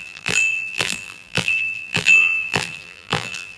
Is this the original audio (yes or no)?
no